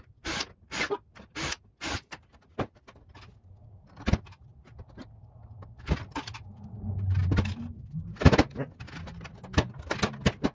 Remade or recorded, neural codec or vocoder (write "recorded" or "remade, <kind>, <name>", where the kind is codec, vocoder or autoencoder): recorded